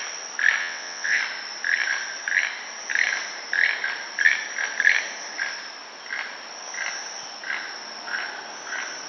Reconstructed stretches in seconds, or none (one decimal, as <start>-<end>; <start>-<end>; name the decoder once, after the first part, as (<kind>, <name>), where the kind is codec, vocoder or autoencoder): 0.6-1.2 (vocoder, WaveNeXt)